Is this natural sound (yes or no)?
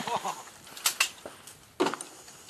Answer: yes